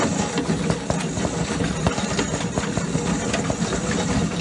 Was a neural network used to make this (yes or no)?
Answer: no